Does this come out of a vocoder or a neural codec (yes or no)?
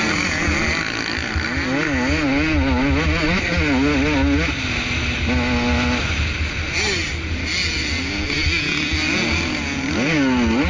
no